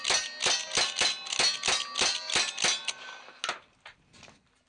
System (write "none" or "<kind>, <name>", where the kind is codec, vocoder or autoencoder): none